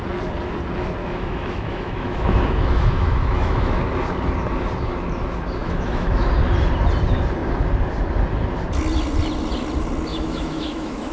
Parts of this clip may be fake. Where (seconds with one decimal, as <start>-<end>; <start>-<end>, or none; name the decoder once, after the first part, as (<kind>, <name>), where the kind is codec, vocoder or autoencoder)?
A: 1.0-3.8 (autoencoder, DAC-VAE); 5.6-6.3; 10.1-11.1